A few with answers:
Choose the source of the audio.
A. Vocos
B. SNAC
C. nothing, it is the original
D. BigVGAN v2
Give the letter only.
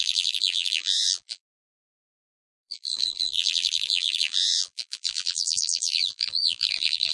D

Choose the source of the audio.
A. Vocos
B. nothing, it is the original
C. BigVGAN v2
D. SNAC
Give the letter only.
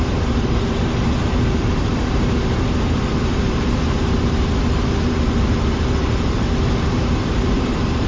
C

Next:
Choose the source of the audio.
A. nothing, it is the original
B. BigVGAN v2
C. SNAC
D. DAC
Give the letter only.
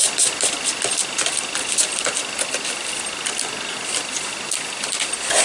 A